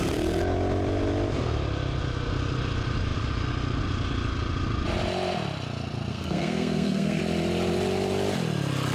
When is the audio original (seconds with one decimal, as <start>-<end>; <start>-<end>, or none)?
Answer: 0.0-6.1; 7.2-8.9